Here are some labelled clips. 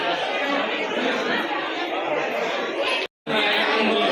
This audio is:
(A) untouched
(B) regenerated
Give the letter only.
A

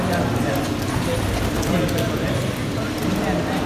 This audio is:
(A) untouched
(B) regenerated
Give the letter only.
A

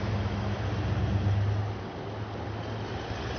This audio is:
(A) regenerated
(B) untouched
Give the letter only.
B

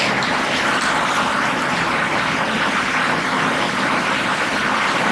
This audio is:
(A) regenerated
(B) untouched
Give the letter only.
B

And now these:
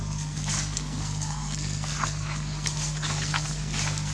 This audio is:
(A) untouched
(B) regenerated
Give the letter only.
B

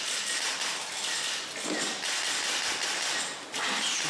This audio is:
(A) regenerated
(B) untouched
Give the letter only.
B